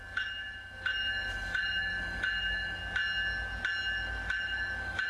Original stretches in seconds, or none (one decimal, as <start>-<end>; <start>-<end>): 2.8-4.0